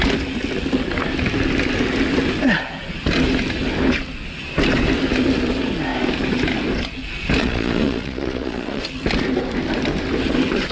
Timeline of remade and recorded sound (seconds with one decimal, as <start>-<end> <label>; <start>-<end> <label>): 0.0-7.4 recorded; 7.4-8.8 remade; 8.8-10.7 recorded